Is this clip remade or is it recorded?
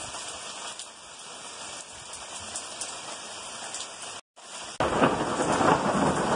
recorded